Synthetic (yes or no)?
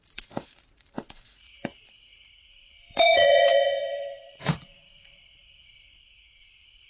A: yes